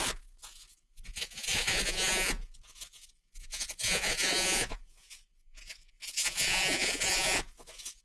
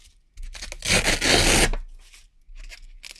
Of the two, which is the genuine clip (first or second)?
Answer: second